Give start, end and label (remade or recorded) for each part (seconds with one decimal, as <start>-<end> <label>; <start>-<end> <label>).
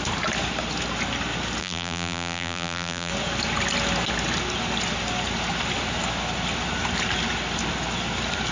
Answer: 0.0-1.6 recorded; 1.6-3.1 remade; 3.1-8.5 recorded